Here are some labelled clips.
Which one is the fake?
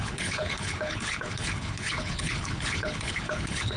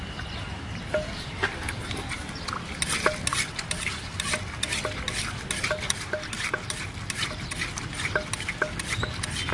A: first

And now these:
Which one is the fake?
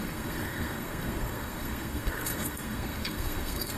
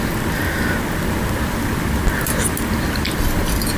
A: first